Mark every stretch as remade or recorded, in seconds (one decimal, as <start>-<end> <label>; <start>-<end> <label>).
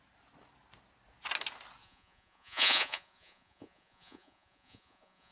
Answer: 0.0-1.8 recorded; 1.8-5.3 remade